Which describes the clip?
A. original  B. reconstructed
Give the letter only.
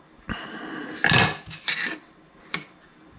A